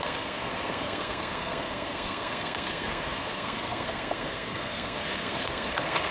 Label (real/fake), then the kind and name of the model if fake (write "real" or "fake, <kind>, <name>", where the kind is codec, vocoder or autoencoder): fake, codec, SNAC